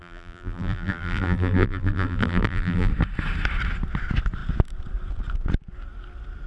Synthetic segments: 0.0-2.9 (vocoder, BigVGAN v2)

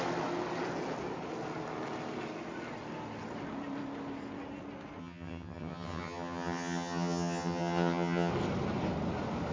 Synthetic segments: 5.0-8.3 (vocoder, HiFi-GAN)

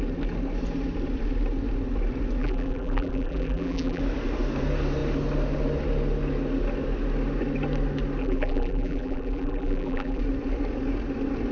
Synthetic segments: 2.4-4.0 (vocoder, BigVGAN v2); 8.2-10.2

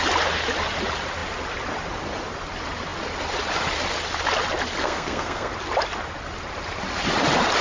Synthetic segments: 4.8-5.5 (codec, SNAC)